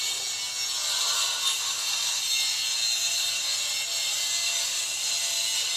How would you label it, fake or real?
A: real